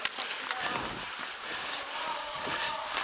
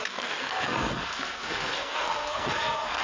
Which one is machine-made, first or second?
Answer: second